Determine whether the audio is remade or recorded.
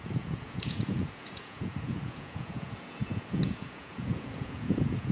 remade